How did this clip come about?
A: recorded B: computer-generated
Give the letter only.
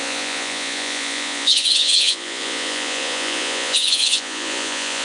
B